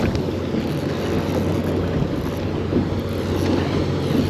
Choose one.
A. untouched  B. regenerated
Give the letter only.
A